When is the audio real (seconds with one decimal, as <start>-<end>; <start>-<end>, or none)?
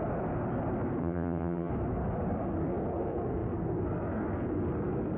0.0-1.0; 1.7-5.2